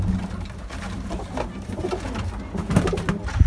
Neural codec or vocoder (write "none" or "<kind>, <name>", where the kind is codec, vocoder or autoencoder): none